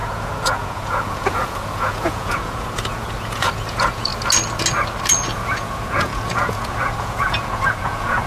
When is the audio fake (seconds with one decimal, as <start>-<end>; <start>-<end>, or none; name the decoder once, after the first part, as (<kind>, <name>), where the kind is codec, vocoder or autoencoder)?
0.0-4.1 (vocoder, Vocos); 5.3-8.3